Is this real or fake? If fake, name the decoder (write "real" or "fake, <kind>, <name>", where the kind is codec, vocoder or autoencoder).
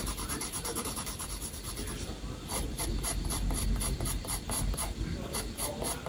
fake, vocoder, BigVGAN v2